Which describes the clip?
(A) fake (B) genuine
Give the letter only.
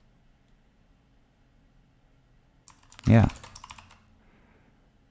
B